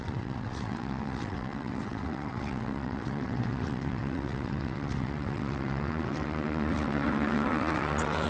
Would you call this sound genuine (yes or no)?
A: no